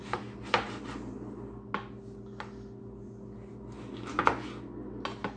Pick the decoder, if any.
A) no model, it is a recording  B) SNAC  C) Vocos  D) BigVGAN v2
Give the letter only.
A